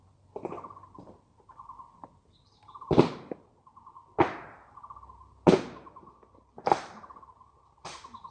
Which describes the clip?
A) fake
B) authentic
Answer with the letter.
B